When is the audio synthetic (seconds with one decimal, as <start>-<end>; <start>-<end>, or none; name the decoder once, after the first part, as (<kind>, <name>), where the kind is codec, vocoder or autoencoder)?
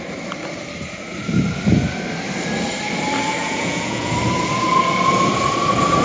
3.4-4.1 (vocoder, Vocos)